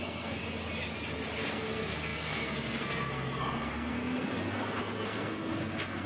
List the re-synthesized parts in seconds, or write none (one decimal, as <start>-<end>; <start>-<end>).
0.0-0.4; 1.4-6.1